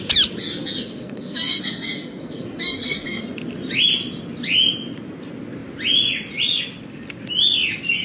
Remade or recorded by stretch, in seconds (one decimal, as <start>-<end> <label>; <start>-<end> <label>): 0.0-0.4 recorded; 0.4-3.2 remade; 3.2-8.0 recorded